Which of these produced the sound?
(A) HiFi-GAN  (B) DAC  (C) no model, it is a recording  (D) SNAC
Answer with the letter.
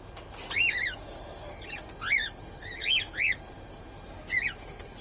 C